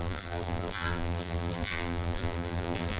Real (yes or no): no